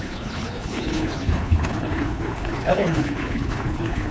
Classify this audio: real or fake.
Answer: fake